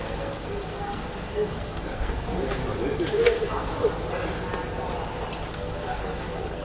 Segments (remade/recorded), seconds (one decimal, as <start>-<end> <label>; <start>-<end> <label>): 0.0-2.6 remade; 2.6-3.1 recorded; 3.1-3.7 remade; 3.7-5.5 recorded; 5.5-6.6 remade